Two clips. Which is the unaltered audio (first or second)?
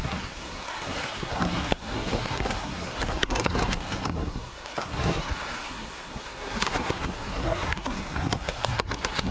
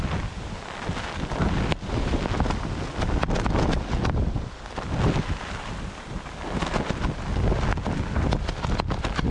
second